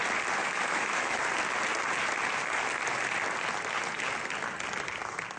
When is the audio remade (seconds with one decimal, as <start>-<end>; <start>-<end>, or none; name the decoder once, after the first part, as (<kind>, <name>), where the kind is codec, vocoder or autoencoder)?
0.4-1.2 (autoencoder, DAC-VAE)